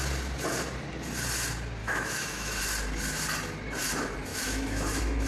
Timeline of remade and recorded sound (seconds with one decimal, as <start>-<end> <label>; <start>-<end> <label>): 0.0-1.8 recorded; 1.8-2.6 remade; 2.6-4.3 recorded; 4.3-5.3 remade